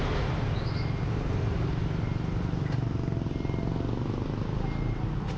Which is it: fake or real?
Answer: real